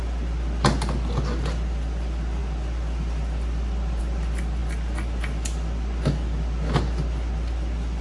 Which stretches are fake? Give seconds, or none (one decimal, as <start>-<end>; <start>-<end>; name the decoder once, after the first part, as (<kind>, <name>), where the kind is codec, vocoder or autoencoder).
none